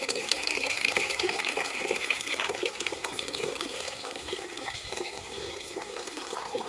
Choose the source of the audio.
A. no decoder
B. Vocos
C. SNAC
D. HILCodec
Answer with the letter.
C